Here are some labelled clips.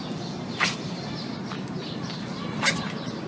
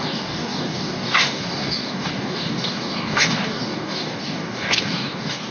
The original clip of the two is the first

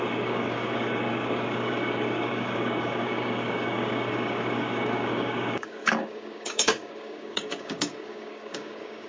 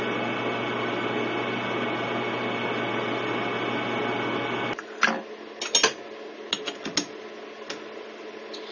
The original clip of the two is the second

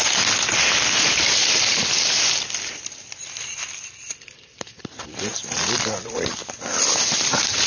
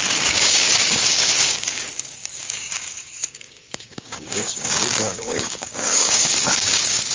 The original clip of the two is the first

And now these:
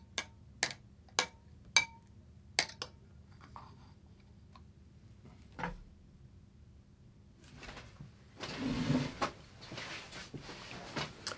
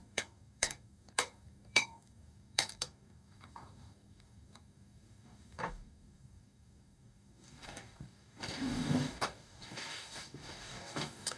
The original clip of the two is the first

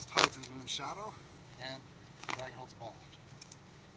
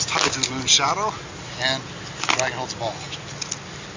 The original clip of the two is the second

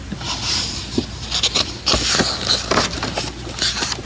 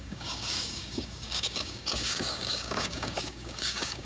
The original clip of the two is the first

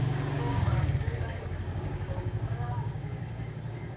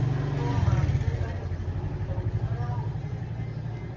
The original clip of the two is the second